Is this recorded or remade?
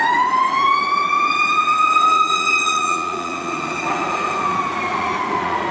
remade